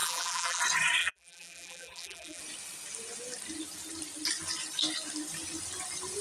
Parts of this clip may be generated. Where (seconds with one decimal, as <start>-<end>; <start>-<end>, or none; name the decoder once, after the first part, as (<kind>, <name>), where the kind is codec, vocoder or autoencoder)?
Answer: 0.0-0.6 (vocoder, BigVGAN v2); 1.0-2.4